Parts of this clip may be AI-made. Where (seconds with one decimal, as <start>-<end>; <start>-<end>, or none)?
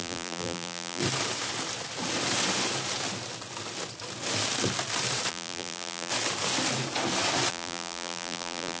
0.0-1.0; 5.3-6.1; 7.5-8.8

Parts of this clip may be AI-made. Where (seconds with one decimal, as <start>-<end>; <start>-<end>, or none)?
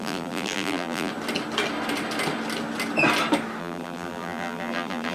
0.0-1.1; 3.6-5.1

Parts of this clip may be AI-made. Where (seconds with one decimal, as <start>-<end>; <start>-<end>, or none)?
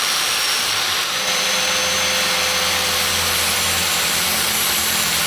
0.0-1.8; 3.8-5.3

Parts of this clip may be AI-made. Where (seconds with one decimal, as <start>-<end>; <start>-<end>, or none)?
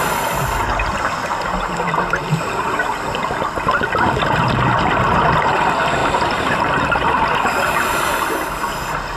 6.0-6.7